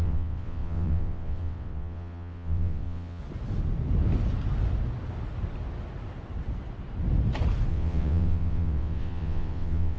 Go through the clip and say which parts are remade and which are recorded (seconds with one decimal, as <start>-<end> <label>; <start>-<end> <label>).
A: 0.0-3.2 remade; 3.2-7.7 recorded; 7.7-10.0 remade